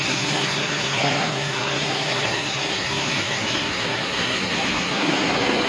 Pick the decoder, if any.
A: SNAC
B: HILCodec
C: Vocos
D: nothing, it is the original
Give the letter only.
A